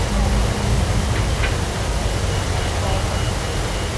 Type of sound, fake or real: real